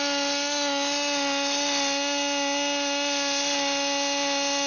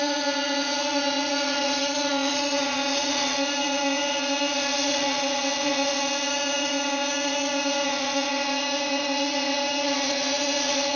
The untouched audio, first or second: first